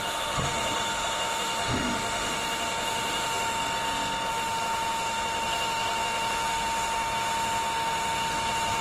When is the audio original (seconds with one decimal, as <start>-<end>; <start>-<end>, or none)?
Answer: 3.6-4.3